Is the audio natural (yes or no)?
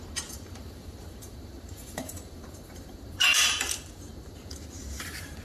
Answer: no